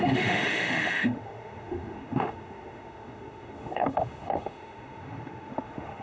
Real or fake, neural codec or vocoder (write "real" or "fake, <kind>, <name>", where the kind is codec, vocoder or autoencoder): fake, autoencoder, DAC-VAE